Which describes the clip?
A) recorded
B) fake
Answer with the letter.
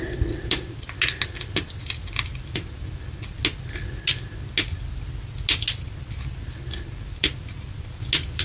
A